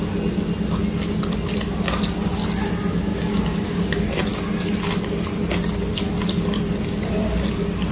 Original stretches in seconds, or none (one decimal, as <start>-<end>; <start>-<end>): 0.0-3.1; 3.9-7.9